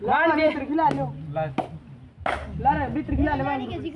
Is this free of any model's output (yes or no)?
yes